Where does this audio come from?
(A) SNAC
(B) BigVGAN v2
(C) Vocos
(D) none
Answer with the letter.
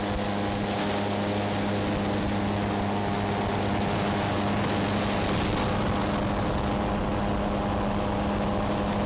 D